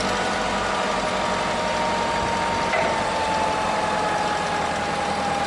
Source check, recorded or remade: recorded